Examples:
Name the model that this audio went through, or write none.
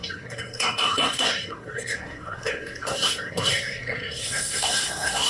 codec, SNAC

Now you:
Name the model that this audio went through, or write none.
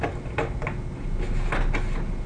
none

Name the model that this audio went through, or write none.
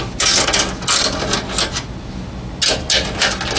none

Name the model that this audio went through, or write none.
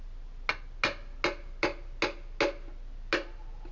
none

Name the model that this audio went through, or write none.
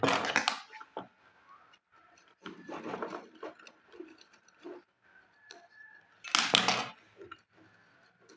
none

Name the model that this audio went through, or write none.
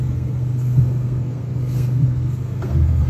codec, SNAC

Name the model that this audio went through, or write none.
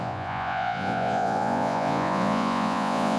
vocoder, Vocos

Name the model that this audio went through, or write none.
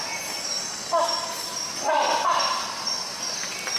none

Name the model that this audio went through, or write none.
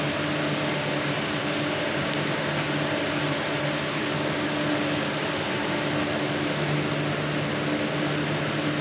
none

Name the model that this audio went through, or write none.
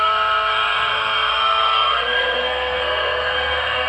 codec, SNAC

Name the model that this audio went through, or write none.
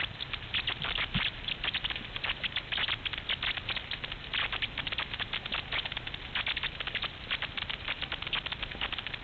none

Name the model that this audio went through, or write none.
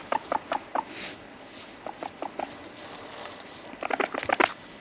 none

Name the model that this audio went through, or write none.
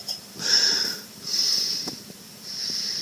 vocoder, BigVGAN v2